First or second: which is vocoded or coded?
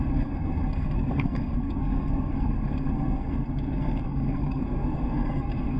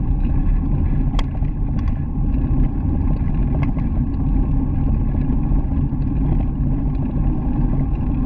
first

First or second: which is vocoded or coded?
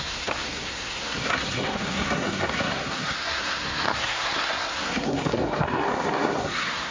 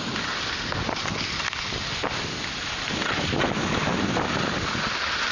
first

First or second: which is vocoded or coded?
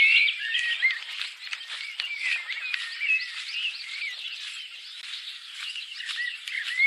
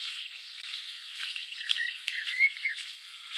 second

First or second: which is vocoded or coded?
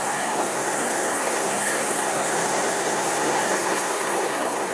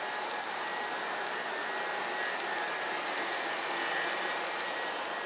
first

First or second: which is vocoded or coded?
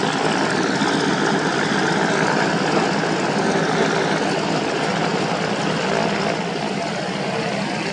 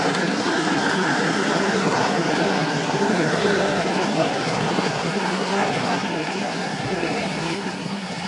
second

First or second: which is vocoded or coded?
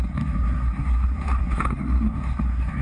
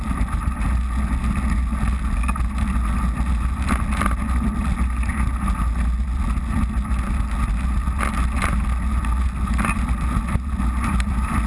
first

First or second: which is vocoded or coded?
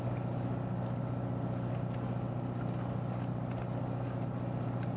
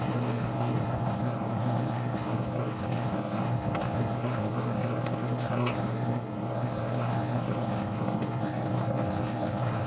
second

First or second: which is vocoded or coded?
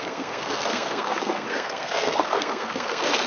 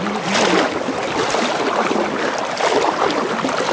first